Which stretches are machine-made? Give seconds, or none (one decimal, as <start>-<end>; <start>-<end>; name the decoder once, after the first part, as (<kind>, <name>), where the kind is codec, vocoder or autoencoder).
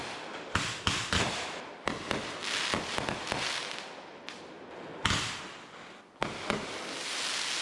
none